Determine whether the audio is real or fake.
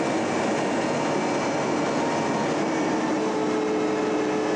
real